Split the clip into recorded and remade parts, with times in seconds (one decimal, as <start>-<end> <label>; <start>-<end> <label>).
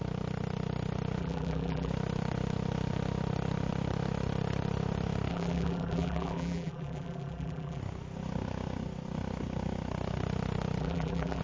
0.0-1.2 recorded; 1.2-1.9 remade; 1.9-5.3 recorded; 5.3-7.8 remade; 7.8-10.8 recorded; 10.8-11.4 remade